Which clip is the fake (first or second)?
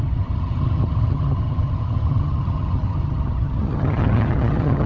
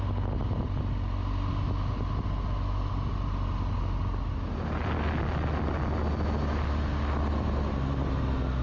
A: first